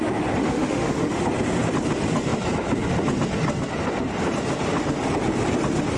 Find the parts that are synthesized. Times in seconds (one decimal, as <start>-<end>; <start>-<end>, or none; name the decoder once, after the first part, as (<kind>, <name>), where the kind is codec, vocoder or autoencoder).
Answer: 0.4-1.2 (autoencoder, DAC-VAE)